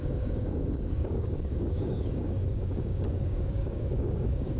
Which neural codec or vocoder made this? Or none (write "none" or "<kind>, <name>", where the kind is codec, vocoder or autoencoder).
codec, DAC